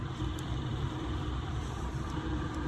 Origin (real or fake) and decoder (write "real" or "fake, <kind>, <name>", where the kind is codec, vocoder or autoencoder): fake, vocoder, BigVGAN v2